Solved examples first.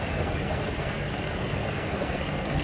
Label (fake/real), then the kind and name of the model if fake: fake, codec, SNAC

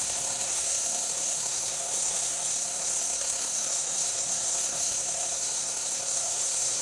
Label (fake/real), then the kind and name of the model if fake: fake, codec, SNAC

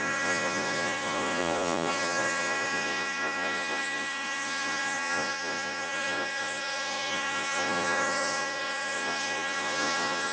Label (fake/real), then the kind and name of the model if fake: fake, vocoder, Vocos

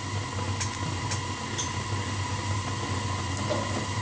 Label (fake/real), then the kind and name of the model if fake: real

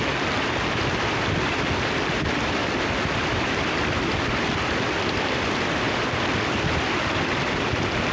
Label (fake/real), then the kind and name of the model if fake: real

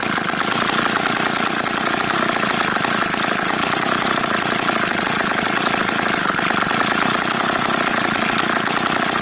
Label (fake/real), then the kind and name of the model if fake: real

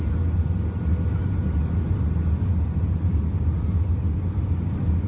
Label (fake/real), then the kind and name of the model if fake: real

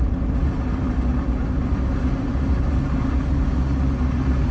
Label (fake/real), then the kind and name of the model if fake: real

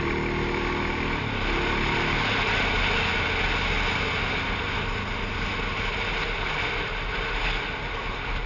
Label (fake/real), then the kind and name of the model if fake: real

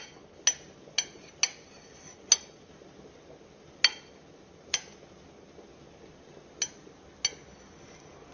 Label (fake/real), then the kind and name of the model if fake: real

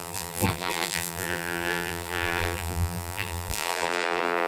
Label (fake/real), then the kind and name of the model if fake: fake, vocoder, BigVGAN v2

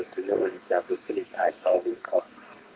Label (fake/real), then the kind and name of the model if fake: fake, codec, SNAC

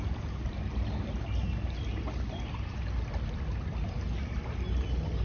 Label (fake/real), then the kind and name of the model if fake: real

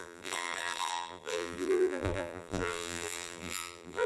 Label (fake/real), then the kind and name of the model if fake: fake, vocoder, BigVGAN v2